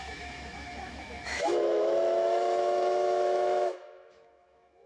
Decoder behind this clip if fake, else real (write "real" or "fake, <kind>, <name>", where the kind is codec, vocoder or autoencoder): fake, autoencoder, DAC-VAE